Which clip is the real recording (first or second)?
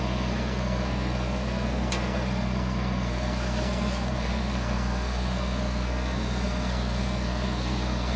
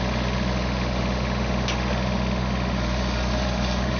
second